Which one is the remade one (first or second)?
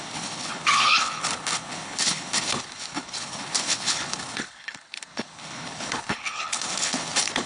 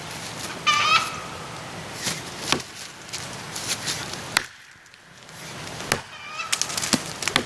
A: first